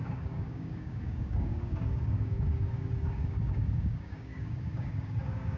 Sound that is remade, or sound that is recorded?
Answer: remade